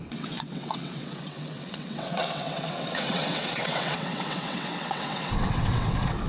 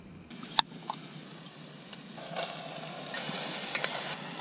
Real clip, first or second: second